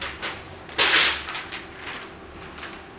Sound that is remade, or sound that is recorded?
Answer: recorded